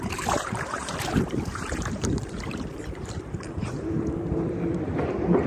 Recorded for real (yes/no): no